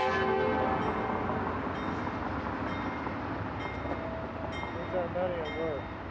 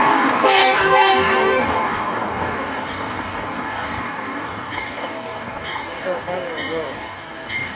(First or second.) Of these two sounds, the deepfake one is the second